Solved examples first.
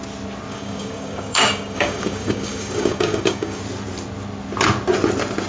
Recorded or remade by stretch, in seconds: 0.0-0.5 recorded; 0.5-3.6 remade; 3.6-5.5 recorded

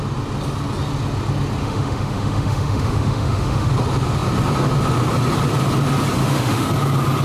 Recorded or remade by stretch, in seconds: 0.0-1.6 recorded; 1.6-3.7 remade; 3.7-6.2 recorded; 6.2-6.7 remade; 6.7-7.2 recorded

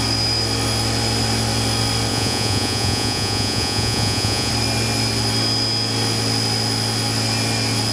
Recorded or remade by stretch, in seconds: 0.0-2.1 recorded; 2.1-4.5 remade; 4.5-7.9 recorded

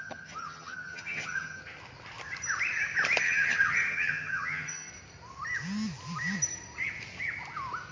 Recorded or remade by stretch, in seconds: 0.0-1.6 remade; 1.6-3.2 recorded; 3.2-4.9 remade; 4.9-7.9 recorded

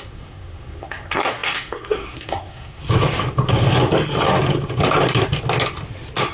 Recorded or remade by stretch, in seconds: 0.0-2.8 remade; 2.8-6.3 recorded

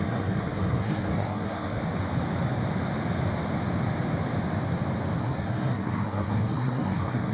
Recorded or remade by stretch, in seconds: 0.0-1.8 remade; 1.8-5.2 recorded; 5.2-7.3 remade

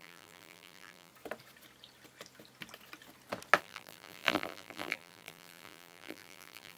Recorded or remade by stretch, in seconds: 0.0-1.1 remade; 1.1-3.6 recorded; 3.6-6.8 remade

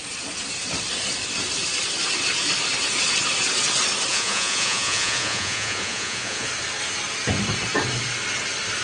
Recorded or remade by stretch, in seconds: 0.0-4.1 recorded; 4.1-6.5 remade; 6.5-8.8 recorded